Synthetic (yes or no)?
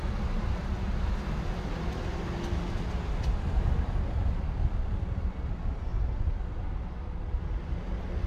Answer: no